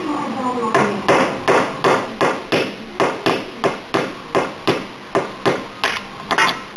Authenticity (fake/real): real